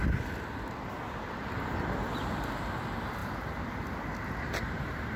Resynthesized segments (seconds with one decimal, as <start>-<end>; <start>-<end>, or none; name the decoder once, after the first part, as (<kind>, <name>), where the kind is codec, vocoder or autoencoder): none